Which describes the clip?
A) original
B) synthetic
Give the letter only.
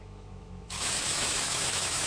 B